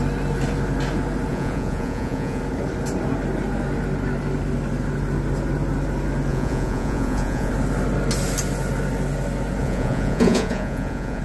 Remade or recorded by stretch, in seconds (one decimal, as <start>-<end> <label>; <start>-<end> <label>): 0.0-1.3 recorded; 1.3-2.4 remade; 2.4-6.3 recorded; 6.3-7.5 remade; 7.5-9.6 recorded; 9.6-11.2 remade